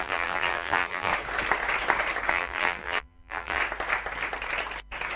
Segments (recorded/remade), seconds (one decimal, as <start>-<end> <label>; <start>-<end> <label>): 0.0-1.1 remade; 1.1-2.3 recorded; 2.3-3.6 remade; 3.6-5.2 recorded